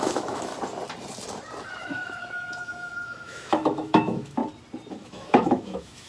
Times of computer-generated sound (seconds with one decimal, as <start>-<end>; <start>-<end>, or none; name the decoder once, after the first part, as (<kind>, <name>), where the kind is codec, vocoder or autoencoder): 0.0-0.5 (autoencoder, DAC-VAE); 1.8-4.4; 4.9-6.1